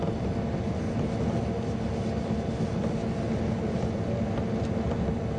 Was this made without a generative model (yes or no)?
yes